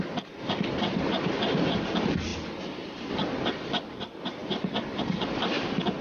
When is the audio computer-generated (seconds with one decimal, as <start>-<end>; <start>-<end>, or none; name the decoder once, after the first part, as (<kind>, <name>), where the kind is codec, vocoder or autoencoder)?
0.0-6.0 (vocoder, BigVGAN v2)